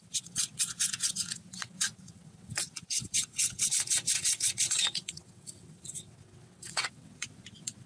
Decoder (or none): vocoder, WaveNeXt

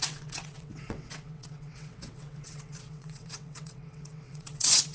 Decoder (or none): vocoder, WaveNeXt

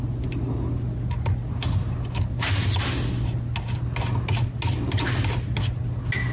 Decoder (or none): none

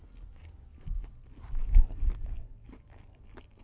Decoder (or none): none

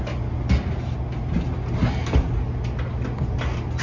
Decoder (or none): none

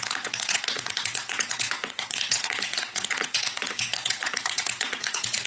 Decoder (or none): vocoder, WaveNeXt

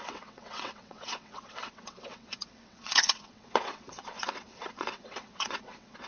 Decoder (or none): vocoder, WaveNeXt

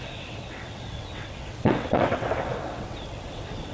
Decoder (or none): vocoder, WaveNeXt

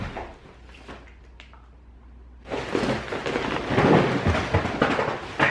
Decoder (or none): none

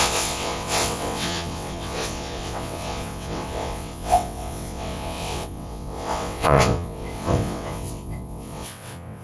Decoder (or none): vocoder, WaveNeXt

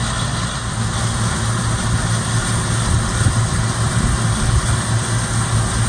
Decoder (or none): none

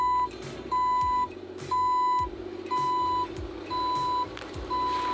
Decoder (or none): none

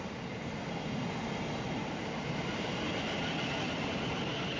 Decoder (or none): none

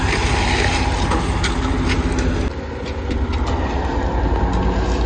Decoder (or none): none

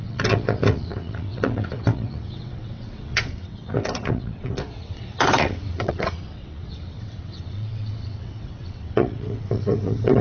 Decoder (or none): vocoder, WaveNeXt